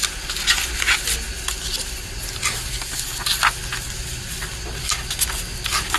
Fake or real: real